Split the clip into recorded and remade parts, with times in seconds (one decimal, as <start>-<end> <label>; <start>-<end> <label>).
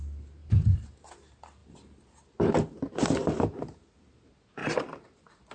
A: 0.0-0.4 recorded; 0.4-1.0 remade; 1.0-4.6 recorded; 4.6-5.5 remade